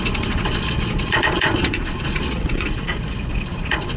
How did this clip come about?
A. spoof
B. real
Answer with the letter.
A